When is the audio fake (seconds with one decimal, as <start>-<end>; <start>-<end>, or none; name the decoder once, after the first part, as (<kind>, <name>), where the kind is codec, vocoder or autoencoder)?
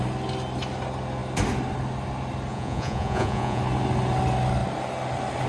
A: 2.5-3.6 (vocoder, Vocos)